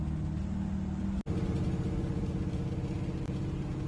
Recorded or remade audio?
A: recorded